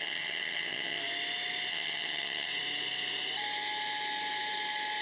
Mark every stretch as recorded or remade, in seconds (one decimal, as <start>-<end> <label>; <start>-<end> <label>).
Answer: 0.0-1.0 remade; 1.0-1.7 recorded; 1.7-2.5 remade; 2.5-5.0 recorded